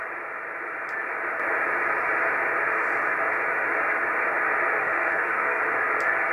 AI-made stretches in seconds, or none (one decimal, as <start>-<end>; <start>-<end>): 4.8-5.6